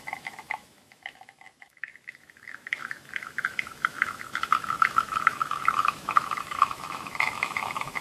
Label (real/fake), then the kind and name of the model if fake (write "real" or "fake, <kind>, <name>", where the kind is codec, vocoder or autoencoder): fake, autoencoder, DAC-VAE